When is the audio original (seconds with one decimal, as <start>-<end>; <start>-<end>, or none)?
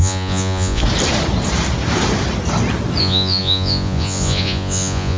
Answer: 0.8-3.0